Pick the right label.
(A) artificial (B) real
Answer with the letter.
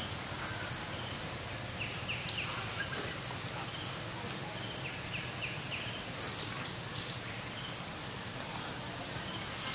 B